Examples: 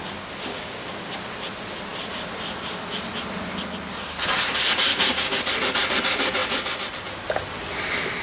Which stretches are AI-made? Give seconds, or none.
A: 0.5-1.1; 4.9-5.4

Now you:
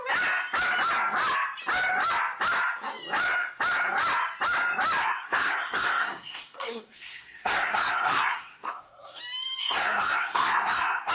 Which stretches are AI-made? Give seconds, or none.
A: 5.0-9.2; 9.6-11.1